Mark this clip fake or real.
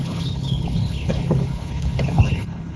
fake